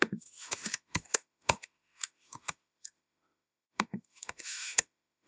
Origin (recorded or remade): remade